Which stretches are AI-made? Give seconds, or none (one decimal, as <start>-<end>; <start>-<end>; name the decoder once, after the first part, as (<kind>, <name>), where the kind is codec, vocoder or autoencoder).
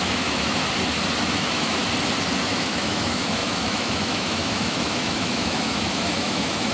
0.0-0.6 (autoencoder, DAC-VAE); 1.2-1.8; 2.5-6.7